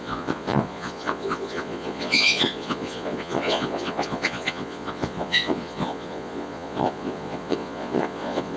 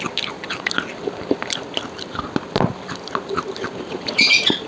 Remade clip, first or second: first